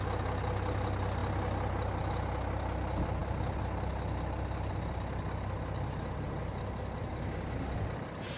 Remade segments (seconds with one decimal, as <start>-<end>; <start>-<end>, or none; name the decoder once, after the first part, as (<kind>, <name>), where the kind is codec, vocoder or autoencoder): none